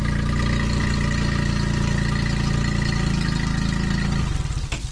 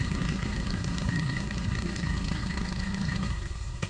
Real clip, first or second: first